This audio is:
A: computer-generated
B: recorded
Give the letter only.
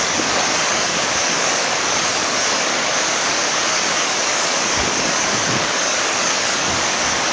A